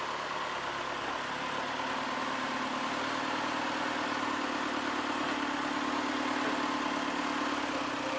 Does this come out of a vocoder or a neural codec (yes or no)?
no